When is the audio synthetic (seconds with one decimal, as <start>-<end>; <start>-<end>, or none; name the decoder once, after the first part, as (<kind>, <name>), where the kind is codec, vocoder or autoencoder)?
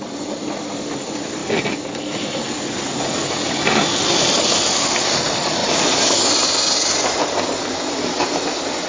none